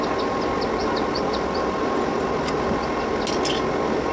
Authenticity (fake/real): real